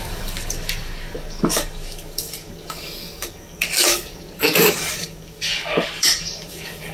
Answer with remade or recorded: remade